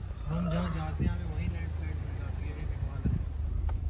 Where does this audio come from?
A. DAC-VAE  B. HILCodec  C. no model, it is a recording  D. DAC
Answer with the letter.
C